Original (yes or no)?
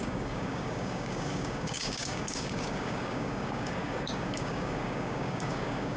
no